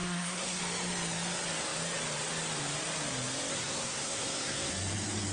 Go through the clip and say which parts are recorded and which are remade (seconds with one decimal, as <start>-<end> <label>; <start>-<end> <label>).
0.0-0.6 remade; 0.6-3.5 recorded; 3.5-4.7 remade; 4.7-5.3 recorded